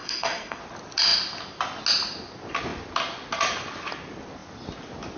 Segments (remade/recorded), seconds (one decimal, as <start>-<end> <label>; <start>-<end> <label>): 0.0-0.6 remade; 0.6-5.2 recorded